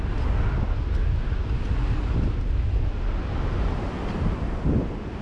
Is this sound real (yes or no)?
yes